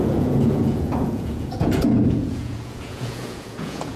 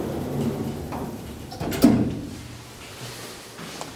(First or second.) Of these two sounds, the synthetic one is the first